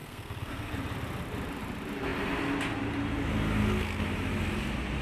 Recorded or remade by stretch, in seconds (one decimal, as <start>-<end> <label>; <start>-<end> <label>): 0.0-0.7 remade; 0.7-5.0 recorded